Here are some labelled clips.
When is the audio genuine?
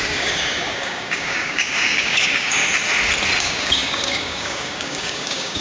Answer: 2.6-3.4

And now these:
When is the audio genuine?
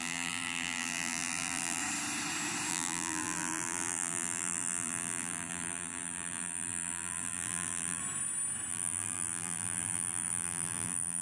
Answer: 1.8-2.7; 8.0-8.7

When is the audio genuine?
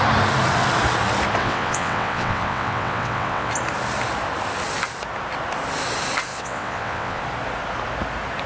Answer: 0.0-1.4; 3.5-6.3; 7.2-8.5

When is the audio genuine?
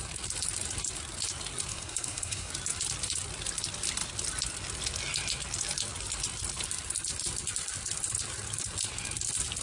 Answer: 0.0-1.7; 2.5-9.6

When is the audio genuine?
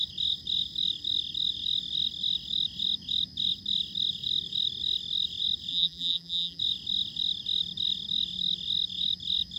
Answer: 0.0-5.7; 6.6-9.6